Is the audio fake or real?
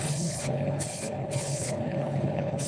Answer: fake